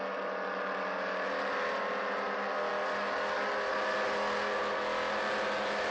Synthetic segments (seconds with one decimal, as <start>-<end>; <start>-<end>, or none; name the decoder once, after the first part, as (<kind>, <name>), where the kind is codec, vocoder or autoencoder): none